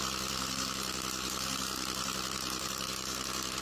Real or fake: fake